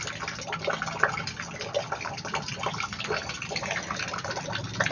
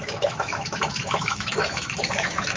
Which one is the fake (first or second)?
second